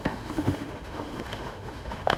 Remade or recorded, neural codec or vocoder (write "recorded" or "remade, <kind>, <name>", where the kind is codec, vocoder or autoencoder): remade, autoencoder, DAC-VAE